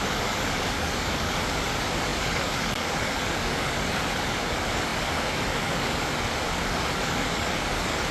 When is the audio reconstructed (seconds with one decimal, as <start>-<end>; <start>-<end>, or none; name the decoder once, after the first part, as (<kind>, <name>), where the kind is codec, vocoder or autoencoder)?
0.0-8.1 (codec, DAC)